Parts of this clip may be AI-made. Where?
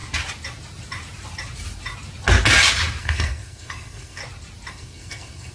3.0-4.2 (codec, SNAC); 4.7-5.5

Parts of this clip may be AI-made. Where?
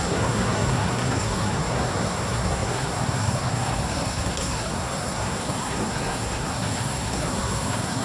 0.0-8.0 (codec, SNAC)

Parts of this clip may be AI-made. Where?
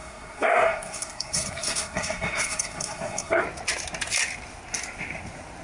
0.0-3.4 (codec, SNAC)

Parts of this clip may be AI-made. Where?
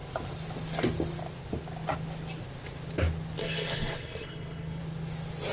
3.4-4.8 (codec, SNAC)